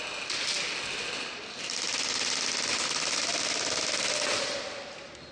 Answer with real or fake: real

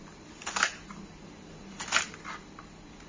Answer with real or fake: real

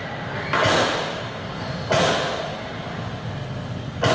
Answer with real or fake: real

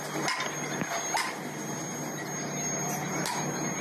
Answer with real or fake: real